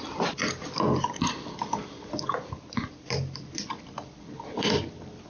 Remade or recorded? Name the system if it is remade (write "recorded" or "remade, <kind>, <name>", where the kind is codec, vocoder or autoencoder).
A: remade, vocoder, BigVGAN v2